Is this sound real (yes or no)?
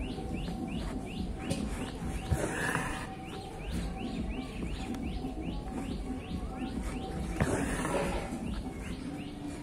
yes